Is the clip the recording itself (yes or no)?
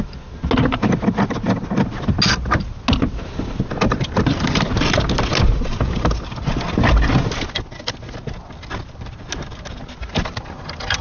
yes